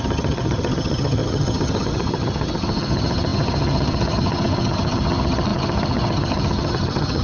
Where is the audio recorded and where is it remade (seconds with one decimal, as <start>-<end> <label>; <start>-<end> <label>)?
0.0-7.2 remade